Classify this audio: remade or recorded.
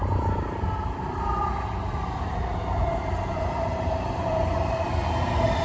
recorded